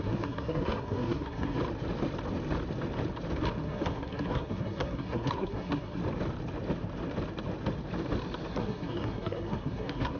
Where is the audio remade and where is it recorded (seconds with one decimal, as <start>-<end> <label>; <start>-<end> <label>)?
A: 0.0-1.6 remade; 1.6-3.5 recorded; 3.5-6.0 remade; 6.0-8.5 recorded; 8.5-10.2 remade